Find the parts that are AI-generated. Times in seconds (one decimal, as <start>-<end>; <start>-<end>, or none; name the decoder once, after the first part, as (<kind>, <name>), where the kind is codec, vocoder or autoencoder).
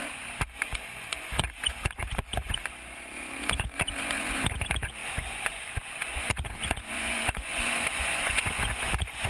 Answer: 0.0-9.3 (vocoder, Vocos)